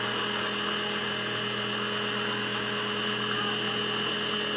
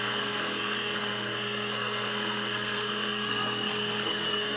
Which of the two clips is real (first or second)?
first